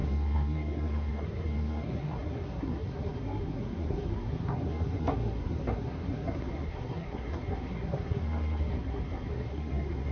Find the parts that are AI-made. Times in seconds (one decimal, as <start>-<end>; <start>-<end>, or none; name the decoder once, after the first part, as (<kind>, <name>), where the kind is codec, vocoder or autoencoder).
0.0-10.1 (codec, SNAC)